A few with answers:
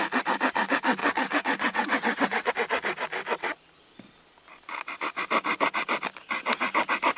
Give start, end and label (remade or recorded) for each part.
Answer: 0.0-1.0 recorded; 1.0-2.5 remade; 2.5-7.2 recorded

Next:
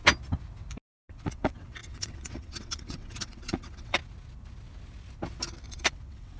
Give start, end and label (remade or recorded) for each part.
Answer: 0.0-1.1 recorded; 1.1-4.0 remade; 4.0-5.7 recorded; 5.7-6.4 remade

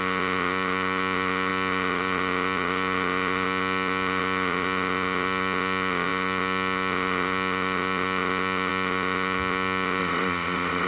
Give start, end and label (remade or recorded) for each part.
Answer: 0.0-10.0 recorded; 10.0-10.9 remade

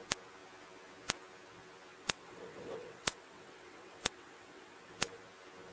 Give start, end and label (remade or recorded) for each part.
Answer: 0.0-1.9 recorded; 1.9-4.9 remade; 4.9-5.7 recorded

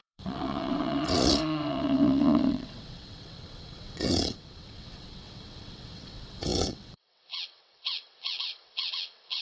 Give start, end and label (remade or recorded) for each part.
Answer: 0.0-9.4 remade

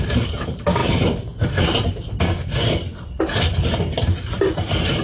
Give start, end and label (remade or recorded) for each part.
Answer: 0.0-5.0 recorded